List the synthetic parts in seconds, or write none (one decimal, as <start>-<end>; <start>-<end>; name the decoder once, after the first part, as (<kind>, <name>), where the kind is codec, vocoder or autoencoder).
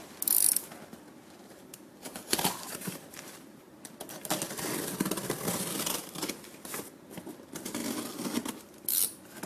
1.4-4.0 (vocoder, BigVGAN v2)